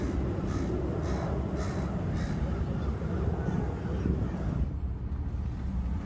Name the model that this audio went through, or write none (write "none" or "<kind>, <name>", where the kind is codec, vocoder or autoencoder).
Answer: none